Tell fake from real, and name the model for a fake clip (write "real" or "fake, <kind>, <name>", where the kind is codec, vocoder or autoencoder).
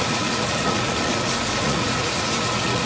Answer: fake, vocoder, Vocos